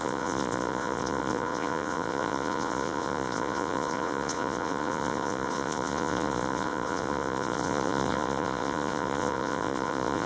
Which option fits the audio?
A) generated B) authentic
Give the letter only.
A